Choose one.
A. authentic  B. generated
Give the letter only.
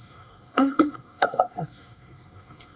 B